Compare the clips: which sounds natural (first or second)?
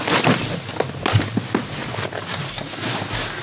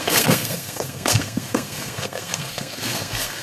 first